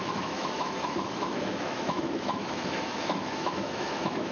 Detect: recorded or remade remade